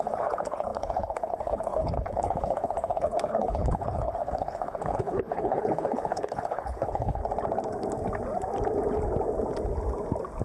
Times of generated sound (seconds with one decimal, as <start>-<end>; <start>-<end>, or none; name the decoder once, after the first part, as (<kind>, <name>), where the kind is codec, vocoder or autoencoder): 0.0-7.2 (codec, HILCodec)